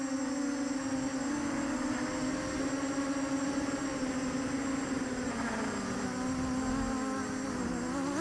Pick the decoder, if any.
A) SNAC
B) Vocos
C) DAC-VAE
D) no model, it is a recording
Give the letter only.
D